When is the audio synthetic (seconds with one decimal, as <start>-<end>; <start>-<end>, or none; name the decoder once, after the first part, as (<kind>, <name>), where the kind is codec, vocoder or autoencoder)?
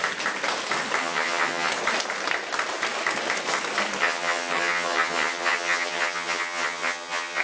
1.0-1.7 (vocoder, HiFi-GAN); 4.0-7.4